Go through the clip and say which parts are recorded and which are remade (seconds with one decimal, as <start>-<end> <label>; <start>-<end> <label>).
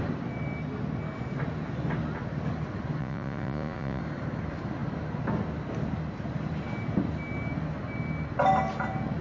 0.0-3.0 recorded; 3.0-4.0 remade; 4.0-9.2 recorded